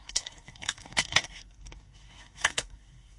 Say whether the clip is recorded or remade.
remade